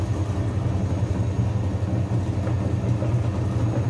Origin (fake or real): real